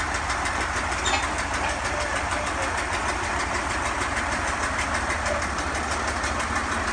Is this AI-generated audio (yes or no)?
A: no